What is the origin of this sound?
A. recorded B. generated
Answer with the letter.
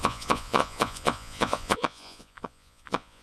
B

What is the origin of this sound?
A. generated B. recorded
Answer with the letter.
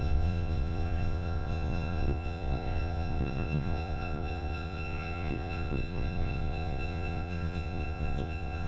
A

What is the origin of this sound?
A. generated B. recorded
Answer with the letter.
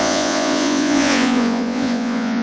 A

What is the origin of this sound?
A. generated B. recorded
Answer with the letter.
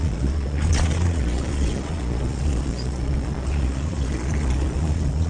A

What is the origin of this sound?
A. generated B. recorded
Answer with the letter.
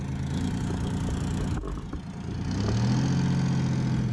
B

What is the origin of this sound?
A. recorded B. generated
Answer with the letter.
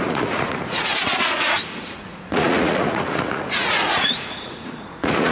B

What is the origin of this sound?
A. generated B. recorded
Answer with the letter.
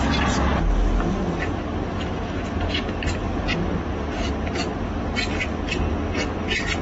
B